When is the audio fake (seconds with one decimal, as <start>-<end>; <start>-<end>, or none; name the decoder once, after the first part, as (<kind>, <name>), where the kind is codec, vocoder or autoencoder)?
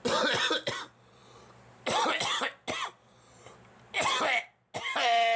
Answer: none